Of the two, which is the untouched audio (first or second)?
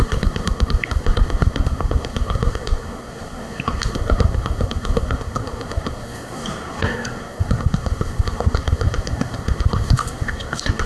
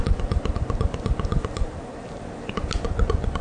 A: second